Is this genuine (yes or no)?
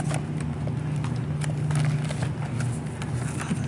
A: yes